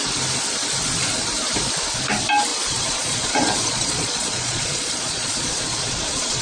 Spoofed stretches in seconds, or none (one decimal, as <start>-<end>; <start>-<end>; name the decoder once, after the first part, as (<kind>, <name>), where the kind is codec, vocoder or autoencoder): 2.5-6.4 (vocoder, Vocos)